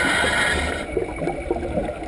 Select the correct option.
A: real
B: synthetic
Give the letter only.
A